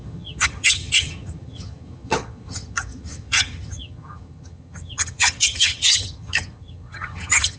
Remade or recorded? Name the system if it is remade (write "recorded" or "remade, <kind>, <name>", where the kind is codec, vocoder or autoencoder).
remade, vocoder, HiFi-GAN